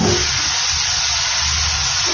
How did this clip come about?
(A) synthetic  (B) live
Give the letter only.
B